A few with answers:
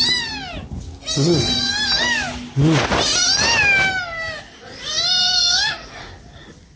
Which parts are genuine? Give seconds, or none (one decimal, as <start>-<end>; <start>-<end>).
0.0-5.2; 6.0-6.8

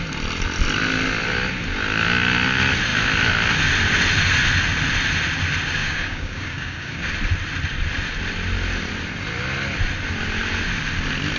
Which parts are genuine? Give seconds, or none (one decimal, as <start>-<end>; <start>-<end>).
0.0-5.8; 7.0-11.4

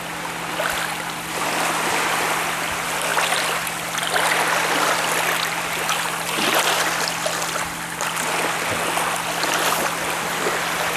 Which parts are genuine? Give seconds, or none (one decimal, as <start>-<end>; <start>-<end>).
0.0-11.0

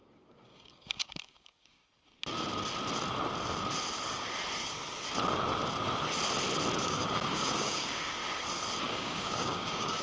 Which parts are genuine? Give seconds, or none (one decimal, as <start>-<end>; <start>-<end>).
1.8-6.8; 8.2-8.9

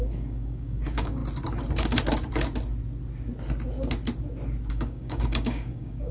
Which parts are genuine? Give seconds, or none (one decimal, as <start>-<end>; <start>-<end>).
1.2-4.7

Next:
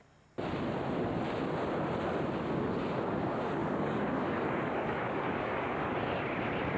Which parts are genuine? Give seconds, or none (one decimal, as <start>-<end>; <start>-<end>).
0.0-3.6; 6.2-6.8